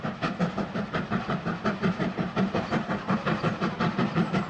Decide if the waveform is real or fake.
fake